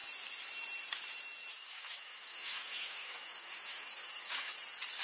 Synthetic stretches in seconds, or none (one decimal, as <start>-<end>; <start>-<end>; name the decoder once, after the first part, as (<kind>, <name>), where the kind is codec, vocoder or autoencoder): 1.5-4.5 (codec, DAC)